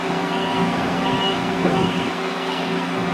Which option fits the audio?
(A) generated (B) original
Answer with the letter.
A